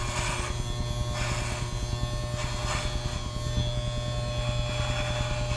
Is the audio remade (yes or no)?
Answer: no